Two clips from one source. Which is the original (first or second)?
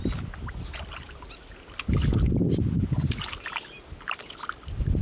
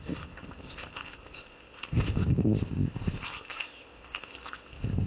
first